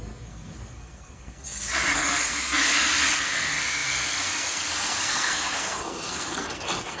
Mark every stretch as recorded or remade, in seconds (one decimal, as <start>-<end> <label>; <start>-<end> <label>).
0.0-7.0 remade